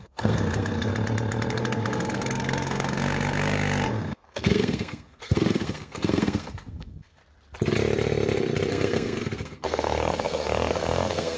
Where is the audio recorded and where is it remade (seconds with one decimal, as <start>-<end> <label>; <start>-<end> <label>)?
0.0-0.9 remade; 0.9-1.5 recorded; 1.5-7.2 remade; 7.2-8.7 recorded; 8.7-11.4 remade